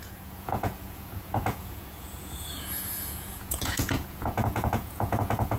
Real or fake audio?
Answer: fake